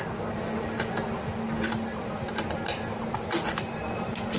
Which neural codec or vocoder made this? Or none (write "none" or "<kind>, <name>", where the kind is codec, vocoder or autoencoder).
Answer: none